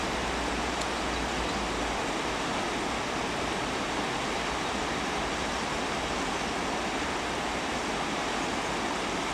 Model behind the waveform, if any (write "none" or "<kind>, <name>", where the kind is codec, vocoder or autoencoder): none